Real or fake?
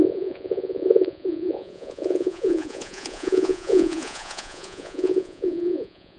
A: fake